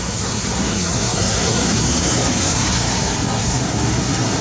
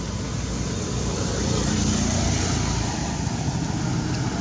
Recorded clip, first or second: second